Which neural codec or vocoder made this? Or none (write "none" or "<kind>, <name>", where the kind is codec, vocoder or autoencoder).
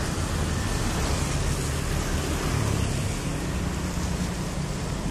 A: none